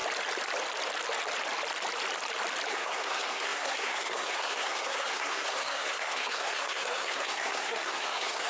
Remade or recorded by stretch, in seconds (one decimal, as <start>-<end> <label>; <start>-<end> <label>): 0.0-2.7 recorded; 2.7-8.5 remade